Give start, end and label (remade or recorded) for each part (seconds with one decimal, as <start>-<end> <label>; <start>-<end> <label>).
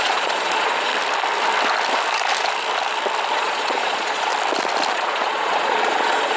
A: 0.0-0.9 remade; 0.9-3.3 recorded; 3.3-4.3 remade; 4.3-4.9 recorded; 4.9-6.4 remade